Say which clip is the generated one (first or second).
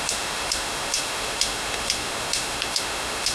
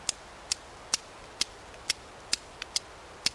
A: first